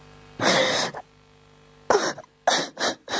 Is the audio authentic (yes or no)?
yes